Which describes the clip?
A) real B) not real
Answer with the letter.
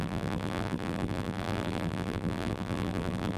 B